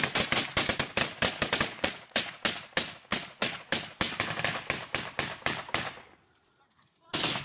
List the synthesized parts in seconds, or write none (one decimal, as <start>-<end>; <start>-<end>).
1.7-2.4; 3.1-3.7